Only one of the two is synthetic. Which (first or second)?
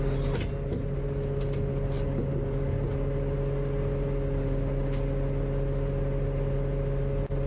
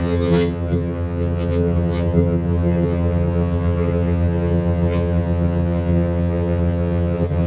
second